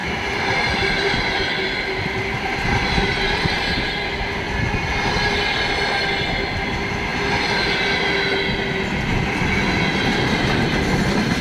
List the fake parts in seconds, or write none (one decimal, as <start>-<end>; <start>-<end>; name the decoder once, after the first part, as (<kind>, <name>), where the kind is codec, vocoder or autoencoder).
0.0-3.9 (vocoder, BigVGAN v2); 10.1-10.7